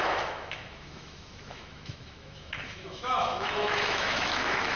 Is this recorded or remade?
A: remade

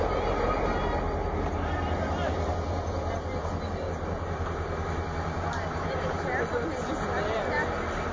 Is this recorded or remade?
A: recorded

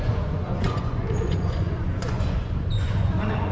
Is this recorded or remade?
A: remade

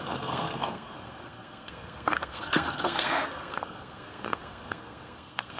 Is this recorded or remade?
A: remade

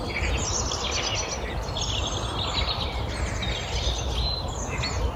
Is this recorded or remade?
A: recorded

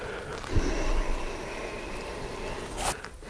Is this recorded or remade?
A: recorded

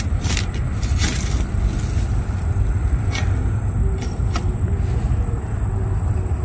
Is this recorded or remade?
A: recorded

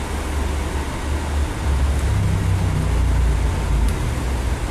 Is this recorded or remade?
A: recorded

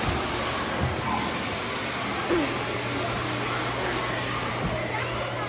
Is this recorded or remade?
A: recorded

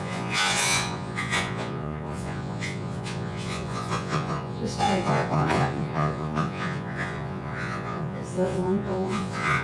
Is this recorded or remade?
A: remade